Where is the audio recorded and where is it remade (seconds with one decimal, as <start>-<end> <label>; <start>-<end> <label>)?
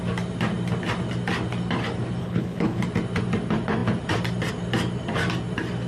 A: 0.0-2.2 recorded; 2.2-2.8 remade; 2.8-5.9 recorded